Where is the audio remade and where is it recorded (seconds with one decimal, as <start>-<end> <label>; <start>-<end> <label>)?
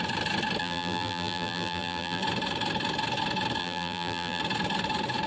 0.0-0.6 recorded; 0.6-2.2 remade; 2.2-3.6 recorded; 3.6-4.4 remade; 4.4-5.3 recorded